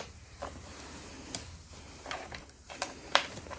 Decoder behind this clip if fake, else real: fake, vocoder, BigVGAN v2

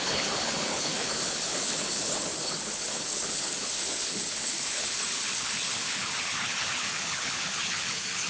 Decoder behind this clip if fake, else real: fake, codec, HILCodec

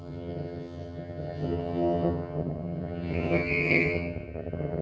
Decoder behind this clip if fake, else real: fake, vocoder, HiFi-GAN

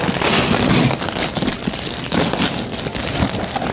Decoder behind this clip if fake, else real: real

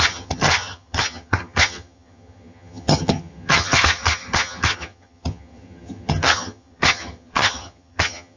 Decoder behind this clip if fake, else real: fake, vocoder, HiFi-GAN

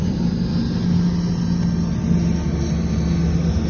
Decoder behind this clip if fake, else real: real